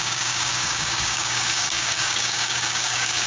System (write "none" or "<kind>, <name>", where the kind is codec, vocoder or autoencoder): codec, DAC